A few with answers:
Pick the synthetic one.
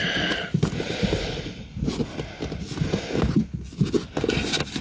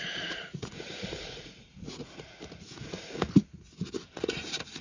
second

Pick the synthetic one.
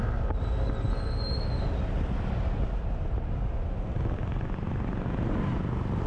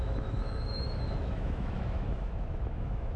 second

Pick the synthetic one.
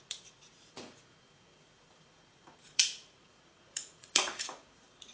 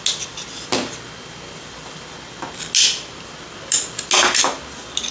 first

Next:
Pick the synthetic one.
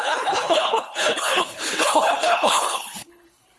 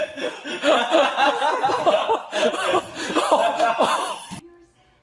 first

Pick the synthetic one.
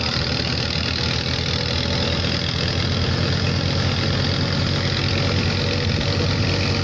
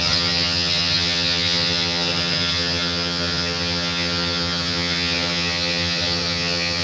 second